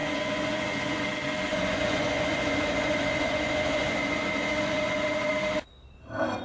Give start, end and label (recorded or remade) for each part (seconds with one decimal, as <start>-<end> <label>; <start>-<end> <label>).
0.0-1.1 remade; 1.1-1.5 recorded; 1.5-5.3 remade; 5.3-6.4 recorded

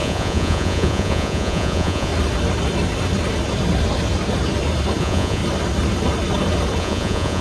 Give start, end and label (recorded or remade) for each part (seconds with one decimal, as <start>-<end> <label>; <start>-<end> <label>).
0.0-2.1 remade; 2.1-5.0 recorded; 5.0-5.4 remade; 5.4-6.8 recorded; 6.8-7.4 remade

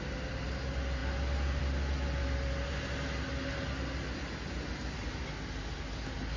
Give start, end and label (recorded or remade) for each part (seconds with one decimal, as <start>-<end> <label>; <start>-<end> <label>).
0.0-6.4 recorded

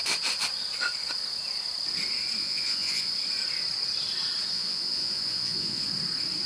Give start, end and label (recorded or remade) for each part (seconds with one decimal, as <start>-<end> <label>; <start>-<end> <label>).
0.0-2.4 recorded; 2.4-3.1 remade; 3.1-4.5 recorded; 4.5-5.9 remade; 5.9-6.5 recorded

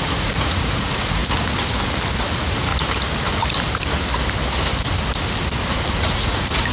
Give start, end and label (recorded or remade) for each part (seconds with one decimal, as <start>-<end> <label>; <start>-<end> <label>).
0.0-1.2 remade; 1.2-2.3 recorded; 2.3-2.7 remade; 2.7-5.7 recorded; 5.7-6.7 remade